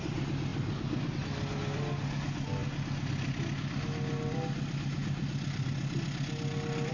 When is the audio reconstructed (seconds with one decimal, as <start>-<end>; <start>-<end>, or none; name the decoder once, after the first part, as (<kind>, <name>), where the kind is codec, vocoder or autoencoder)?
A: none